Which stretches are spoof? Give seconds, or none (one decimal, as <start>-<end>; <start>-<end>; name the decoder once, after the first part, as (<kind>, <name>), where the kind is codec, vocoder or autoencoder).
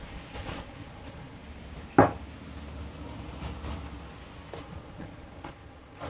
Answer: 0.0-1.4 (vocoder, Vocos); 4.6-6.1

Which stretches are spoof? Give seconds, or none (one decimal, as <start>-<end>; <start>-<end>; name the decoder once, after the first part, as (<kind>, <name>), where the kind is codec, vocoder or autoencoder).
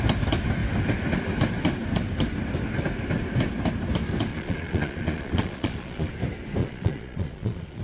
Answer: 4.3-6.1 (vocoder, Vocos); 6.6-7.8